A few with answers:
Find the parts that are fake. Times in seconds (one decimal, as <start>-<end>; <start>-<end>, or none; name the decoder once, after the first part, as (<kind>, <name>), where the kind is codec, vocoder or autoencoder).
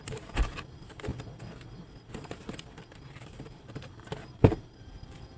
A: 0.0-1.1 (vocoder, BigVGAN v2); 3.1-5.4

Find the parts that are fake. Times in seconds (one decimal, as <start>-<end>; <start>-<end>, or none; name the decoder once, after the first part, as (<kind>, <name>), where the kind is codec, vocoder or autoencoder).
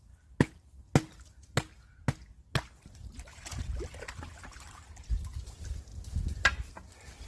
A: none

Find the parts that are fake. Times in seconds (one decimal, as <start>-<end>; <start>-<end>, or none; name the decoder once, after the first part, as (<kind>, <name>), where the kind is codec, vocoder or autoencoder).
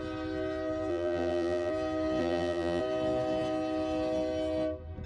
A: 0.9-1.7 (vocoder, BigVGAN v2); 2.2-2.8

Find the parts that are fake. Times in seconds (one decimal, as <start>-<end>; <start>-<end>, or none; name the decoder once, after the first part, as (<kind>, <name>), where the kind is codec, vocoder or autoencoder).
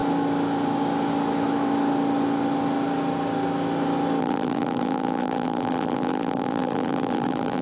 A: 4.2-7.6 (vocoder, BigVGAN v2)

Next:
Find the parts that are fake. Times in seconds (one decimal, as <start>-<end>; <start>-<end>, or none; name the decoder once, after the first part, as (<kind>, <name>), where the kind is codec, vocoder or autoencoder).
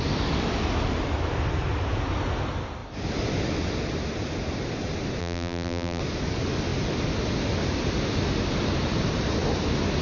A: 5.2-6.0 (vocoder, BigVGAN v2)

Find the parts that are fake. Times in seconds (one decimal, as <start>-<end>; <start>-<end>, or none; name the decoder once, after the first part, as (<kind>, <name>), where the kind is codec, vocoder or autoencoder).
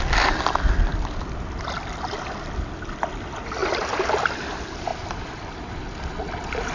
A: 0.9-1.6 (vocoder, BigVGAN v2); 3.6-4.1; 4.9-5.7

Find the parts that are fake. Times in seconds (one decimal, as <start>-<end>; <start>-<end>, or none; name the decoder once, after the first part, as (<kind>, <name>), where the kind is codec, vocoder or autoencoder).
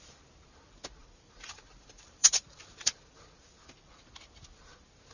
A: 1.0-4.1 (vocoder, BigVGAN v2)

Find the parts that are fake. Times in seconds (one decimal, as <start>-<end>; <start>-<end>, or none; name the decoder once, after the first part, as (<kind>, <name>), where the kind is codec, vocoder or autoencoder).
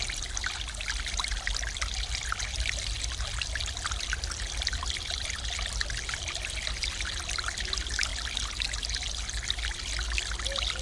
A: none